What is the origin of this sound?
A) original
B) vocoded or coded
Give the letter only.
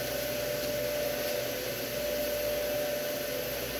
A